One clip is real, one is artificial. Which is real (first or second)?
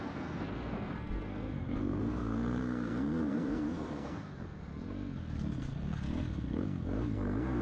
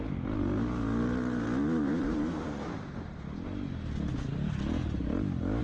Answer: second